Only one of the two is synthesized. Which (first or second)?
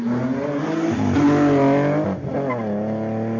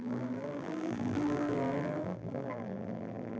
second